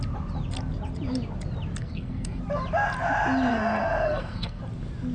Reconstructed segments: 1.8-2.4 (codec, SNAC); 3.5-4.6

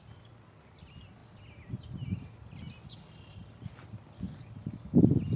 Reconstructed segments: none